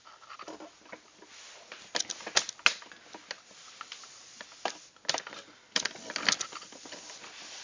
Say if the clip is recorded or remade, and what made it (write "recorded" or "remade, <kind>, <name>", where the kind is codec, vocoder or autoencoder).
recorded